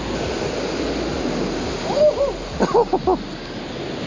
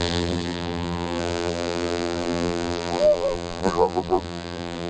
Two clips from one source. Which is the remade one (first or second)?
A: second